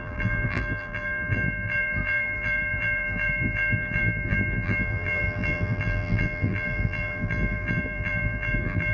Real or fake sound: fake